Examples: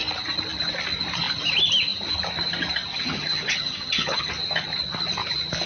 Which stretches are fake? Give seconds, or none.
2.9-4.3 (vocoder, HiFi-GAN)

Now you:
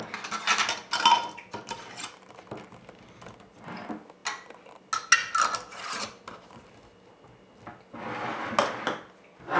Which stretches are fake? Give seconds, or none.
none

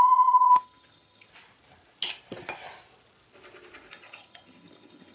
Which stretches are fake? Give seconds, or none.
0.0-1.3 (vocoder, HiFi-GAN); 3.9-5.1